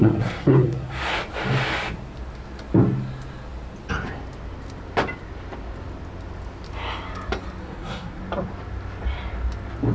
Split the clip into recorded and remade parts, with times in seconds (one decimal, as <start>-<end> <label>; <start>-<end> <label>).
0.0-1.2 remade; 1.2-7.6 recorded; 7.6-8.2 remade; 8.2-9.9 recorded